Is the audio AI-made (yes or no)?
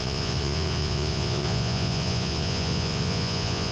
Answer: yes